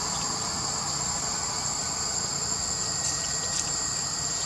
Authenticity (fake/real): real